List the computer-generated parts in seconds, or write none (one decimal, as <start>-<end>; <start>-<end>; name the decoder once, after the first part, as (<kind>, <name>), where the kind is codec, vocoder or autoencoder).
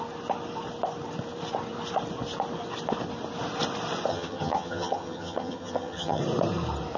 4.1-6.2 (vocoder, HiFi-GAN)